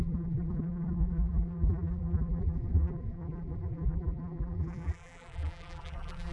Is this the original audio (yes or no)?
no